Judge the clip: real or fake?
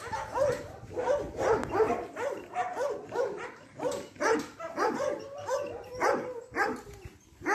real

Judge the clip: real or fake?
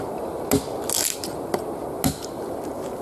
real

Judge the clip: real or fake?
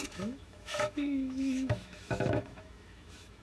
fake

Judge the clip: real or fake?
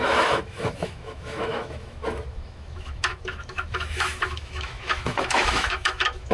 fake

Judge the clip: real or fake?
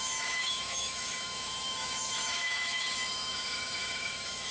fake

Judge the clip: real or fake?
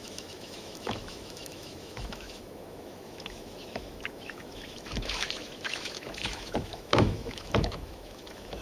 fake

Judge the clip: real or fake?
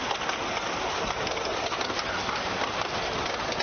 real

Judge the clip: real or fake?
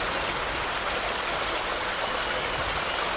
real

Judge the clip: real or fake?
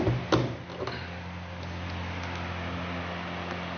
real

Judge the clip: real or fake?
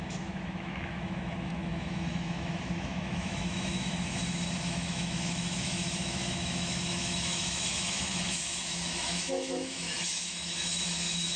fake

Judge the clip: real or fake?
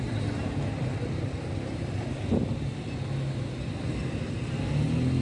real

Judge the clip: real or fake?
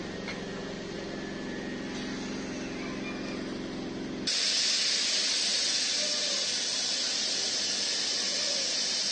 real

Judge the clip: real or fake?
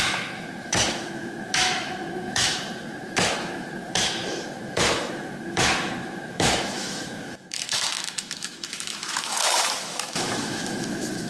fake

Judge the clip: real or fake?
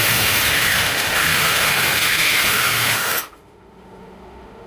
fake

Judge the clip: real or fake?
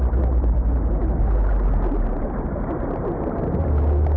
real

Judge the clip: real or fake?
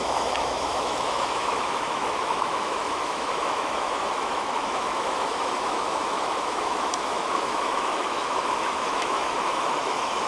fake